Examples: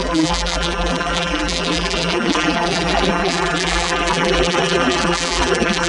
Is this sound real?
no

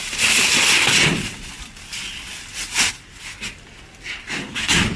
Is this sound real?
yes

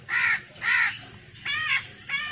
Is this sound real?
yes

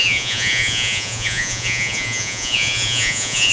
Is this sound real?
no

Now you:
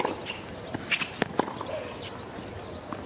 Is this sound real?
yes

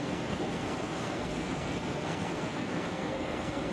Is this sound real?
no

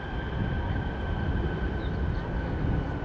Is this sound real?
yes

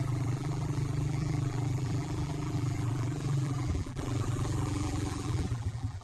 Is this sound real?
no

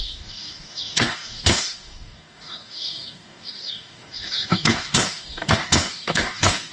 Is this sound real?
no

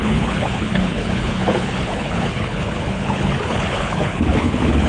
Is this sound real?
no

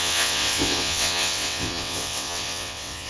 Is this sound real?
no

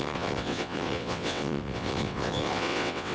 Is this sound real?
no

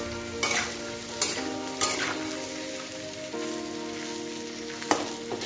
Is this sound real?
yes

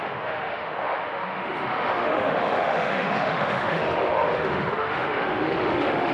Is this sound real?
no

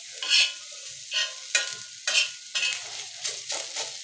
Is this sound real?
yes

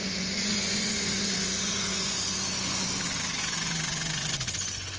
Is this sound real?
no